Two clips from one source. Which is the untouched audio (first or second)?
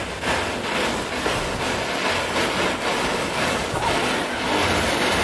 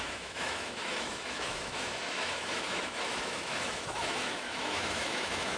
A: first